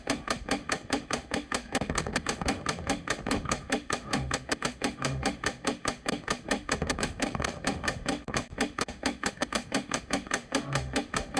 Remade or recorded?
remade